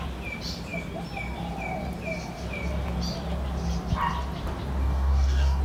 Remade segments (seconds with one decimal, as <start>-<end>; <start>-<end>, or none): 4.8-5.6